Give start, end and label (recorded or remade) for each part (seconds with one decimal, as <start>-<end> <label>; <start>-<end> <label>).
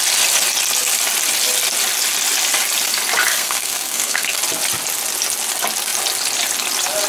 0.0-3.3 recorded; 3.3-4.4 remade; 4.4-7.1 recorded